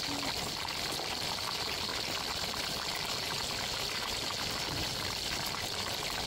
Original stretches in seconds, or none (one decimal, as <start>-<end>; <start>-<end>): 0.0-1.9; 3.0-6.3